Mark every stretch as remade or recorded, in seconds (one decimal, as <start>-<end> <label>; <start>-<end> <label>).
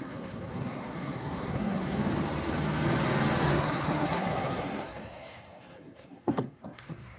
0.0-2.0 remade; 2.0-3.4 recorded; 3.4-7.2 remade